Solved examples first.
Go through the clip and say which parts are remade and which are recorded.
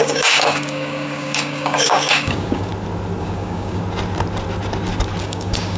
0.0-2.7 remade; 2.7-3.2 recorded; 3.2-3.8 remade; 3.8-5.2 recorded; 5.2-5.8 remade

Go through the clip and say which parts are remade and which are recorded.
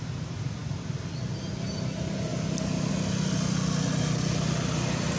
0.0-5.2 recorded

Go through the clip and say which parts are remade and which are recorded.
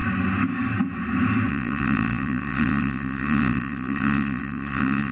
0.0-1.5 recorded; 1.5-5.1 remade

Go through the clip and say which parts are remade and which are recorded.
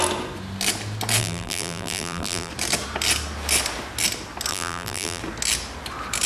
0.0-1.2 recorded; 1.2-2.5 remade; 2.5-4.5 recorded; 4.5-5.2 remade; 5.2-6.3 recorded